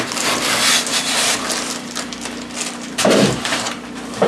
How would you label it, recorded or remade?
recorded